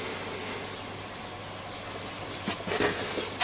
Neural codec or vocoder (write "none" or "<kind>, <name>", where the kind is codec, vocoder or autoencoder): none